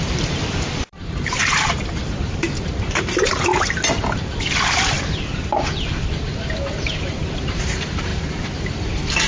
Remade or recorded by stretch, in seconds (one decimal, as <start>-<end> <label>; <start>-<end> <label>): 0.0-1.4 remade; 1.4-2.1 recorded; 2.1-3.5 remade; 3.5-6.7 recorded; 6.7-8.1 remade; 8.1-8.6 recorded; 8.6-9.3 remade